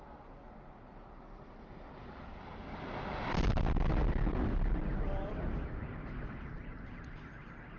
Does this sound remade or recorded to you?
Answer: recorded